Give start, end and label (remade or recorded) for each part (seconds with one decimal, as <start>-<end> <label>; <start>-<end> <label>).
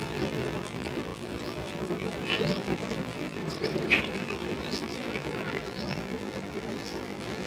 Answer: 0.0-3.4 remade; 3.4-4.1 recorded; 4.1-7.5 remade